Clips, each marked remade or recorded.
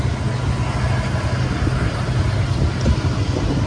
recorded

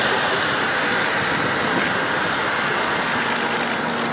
recorded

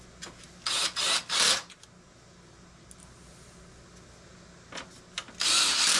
recorded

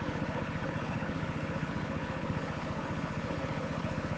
remade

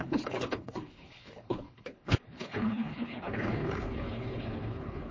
remade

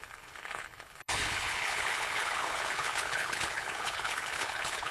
remade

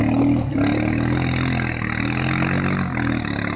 recorded